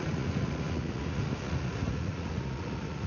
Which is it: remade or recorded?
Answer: remade